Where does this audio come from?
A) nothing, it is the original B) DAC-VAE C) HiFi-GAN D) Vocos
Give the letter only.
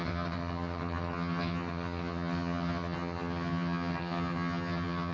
C